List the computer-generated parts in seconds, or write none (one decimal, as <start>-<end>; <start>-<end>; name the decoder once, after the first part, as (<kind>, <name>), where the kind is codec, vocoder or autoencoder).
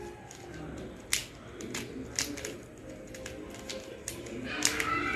none